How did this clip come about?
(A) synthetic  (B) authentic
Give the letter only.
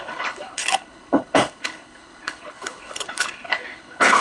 A